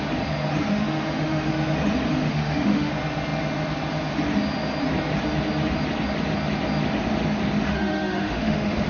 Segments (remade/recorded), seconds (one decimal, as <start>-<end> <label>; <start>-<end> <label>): 0.0-0.7 recorded; 0.7-1.5 remade; 1.5-2.1 recorded; 2.1-2.9 remade; 2.9-7.7 recorded; 7.7-8.9 remade